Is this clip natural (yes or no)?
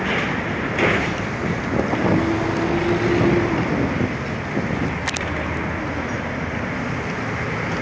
yes